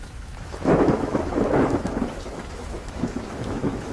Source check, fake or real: fake